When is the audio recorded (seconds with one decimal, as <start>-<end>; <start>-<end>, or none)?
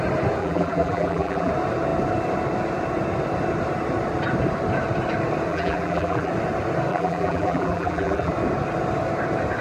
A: 0.0-0.4; 1.5-5.5; 6.3-6.9; 8.3-9.6